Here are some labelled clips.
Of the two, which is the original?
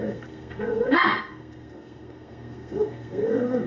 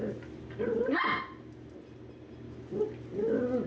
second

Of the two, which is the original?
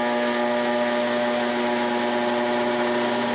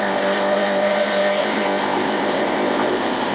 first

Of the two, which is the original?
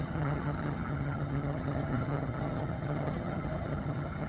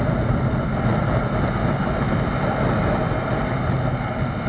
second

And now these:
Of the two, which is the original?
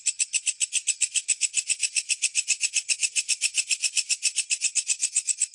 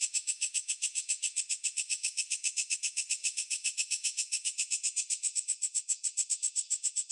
first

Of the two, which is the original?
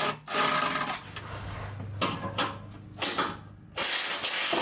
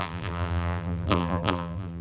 first